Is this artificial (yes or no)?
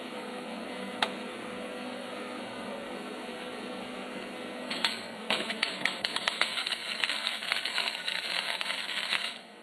yes